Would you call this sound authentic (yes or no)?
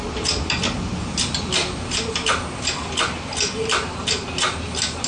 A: yes